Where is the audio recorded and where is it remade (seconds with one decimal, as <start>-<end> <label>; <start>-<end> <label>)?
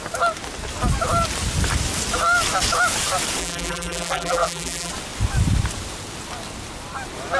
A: 0.0-3.4 recorded; 3.4-4.9 remade; 4.9-7.4 recorded